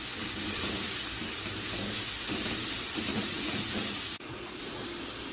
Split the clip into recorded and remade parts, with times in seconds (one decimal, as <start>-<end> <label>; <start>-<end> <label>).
0.0-3.1 recorded; 3.1-4.8 remade; 4.8-5.3 recorded